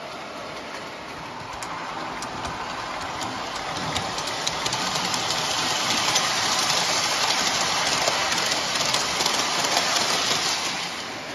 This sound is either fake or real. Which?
real